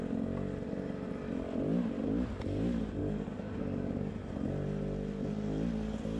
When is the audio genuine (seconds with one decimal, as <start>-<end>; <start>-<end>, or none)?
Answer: 0.0-3.0; 4.1-6.2